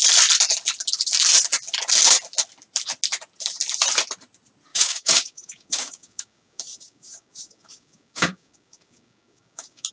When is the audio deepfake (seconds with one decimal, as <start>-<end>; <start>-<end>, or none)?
4.7-9.9